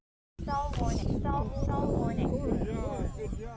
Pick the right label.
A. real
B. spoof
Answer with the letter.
A